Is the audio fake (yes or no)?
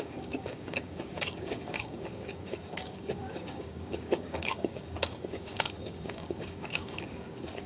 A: yes